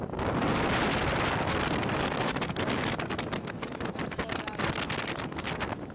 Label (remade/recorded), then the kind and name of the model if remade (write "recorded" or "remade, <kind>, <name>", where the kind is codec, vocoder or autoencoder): recorded